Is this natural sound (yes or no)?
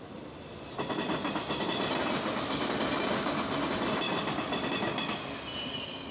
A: yes